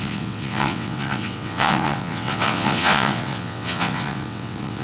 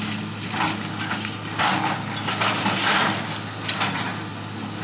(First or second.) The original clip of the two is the second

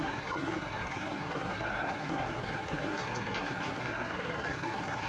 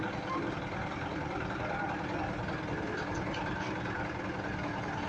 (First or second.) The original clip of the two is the second